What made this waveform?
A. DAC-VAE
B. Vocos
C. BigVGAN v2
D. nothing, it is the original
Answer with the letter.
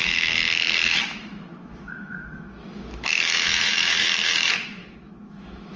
A